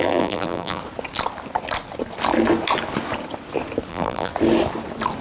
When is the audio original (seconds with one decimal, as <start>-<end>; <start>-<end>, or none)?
0.8-3.9; 4.3-5.2